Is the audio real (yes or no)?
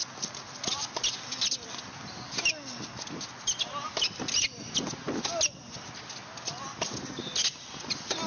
yes